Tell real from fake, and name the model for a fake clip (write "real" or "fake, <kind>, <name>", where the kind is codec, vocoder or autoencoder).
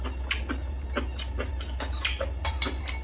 real